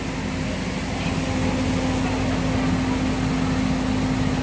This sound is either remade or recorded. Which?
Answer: recorded